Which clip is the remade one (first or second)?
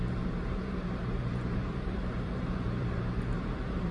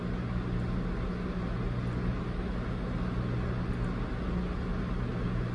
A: first